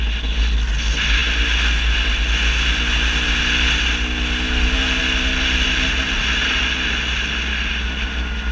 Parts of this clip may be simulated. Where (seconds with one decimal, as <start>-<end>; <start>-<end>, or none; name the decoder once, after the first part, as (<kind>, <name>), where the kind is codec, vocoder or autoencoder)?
none